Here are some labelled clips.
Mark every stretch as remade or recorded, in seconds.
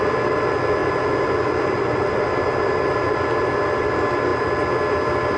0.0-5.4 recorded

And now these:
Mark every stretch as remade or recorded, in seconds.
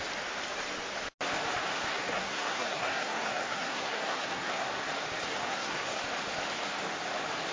0.0-1.9 recorded; 1.9-4.8 remade; 4.8-5.4 recorded; 5.4-6.0 remade; 6.0-7.5 recorded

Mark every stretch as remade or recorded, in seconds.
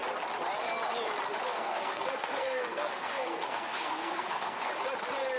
0.0-1.5 recorded; 1.5-4.7 remade; 4.7-5.4 recorded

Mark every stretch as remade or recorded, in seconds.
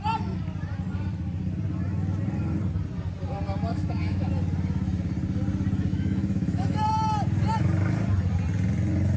0.0-3.7 recorded; 3.7-4.3 remade; 4.3-5.9 recorded; 5.9-6.9 remade; 6.9-9.2 recorded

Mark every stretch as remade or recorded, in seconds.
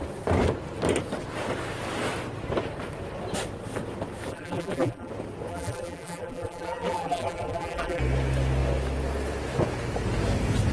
0.0-4.3 recorded; 4.3-5.1 remade; 5.1-5.5 recorded; 5.5-8.0 remade; 8.0-10.7 recorded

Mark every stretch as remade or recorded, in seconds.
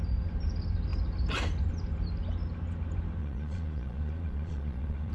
0.0-3.2 recorded; 3.2-5.1 remade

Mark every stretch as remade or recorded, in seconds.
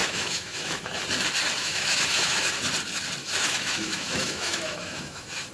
0.0-1.0 remade; 1.0-1.6 recorded; 1.6-2.4 remade; 2.4-3.2 recorded; 3.2-5.5 remade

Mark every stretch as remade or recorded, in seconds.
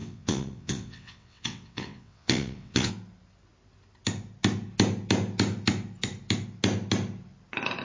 0.0-2.9 remade; 2.9-7.8 recorded